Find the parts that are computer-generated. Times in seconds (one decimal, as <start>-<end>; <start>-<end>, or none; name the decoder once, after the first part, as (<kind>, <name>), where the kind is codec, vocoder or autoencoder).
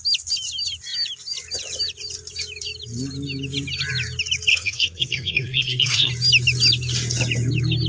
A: 4.5-6.1 (codec, SNAC)